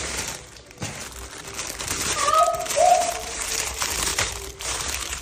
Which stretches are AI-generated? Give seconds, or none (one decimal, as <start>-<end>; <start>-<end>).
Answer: 0.0-1.0; 1.8-5.2